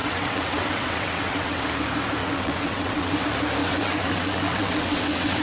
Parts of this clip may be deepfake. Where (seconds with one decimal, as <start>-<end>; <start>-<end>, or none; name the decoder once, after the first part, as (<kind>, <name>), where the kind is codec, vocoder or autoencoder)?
0.0-1.6 (vocoder, WaveNeXt); 2.2-3.2; 3.6-5.4